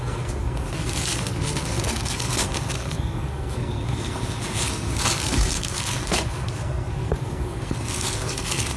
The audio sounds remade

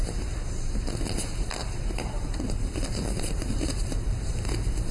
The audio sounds recorded